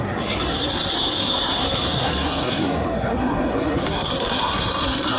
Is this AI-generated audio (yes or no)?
yes